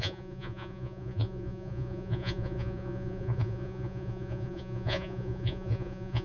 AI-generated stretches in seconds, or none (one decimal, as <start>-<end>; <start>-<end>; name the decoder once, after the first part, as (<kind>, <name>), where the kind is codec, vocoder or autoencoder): 0.0-6.2 (vocoder, Vocos)